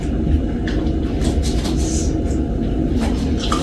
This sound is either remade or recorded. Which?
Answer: recorded